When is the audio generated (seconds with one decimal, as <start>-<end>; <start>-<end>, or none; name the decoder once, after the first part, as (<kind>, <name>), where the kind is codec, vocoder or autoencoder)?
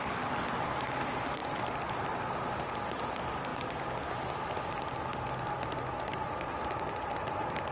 none